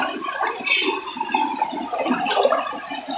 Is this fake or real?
real